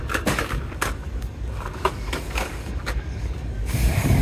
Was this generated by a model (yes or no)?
yes